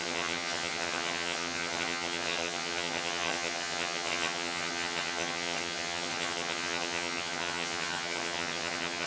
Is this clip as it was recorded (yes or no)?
no